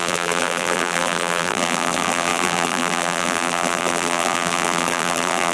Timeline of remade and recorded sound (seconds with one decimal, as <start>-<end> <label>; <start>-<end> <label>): 0.0-5.5 remade